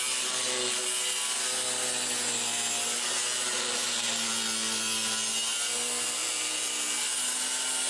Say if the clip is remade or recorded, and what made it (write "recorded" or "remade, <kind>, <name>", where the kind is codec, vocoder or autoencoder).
recorded